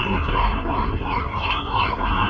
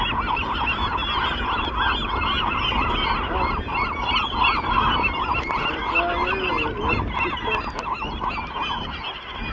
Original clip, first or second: second